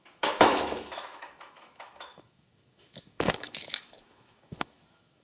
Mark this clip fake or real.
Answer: fake